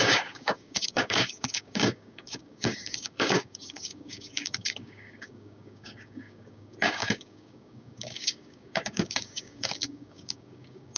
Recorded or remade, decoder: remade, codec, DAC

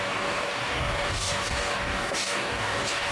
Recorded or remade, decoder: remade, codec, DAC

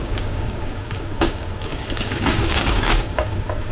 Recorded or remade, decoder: remade, codec, DAC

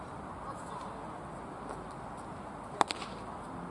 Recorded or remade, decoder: recorded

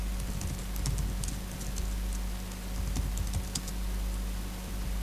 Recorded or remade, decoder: recorded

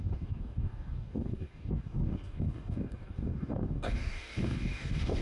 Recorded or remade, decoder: remade, codec, DAC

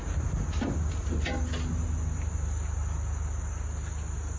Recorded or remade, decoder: recorded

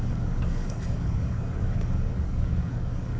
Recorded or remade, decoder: remade, codec, DAC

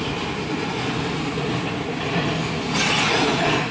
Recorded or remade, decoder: recorded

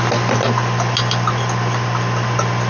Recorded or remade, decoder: recorded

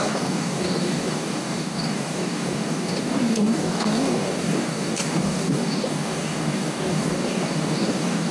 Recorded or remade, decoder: remade, codec, DAC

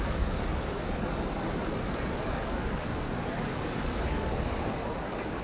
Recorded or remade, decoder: remade, codec, DAC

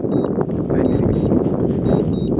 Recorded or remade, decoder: recorded